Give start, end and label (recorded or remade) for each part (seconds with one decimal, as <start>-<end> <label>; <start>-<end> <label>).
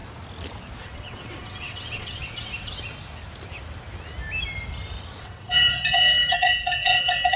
0.0-0.8 recorded; 0.8-2.7 remade; 2.7-5.2 recorded; 5.2-7.4 remade